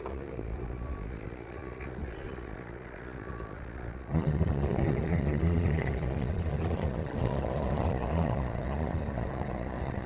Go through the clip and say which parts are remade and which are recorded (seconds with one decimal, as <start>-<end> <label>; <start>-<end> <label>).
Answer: 0.0-10.1 remade